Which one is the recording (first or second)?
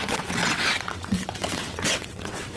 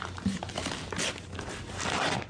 second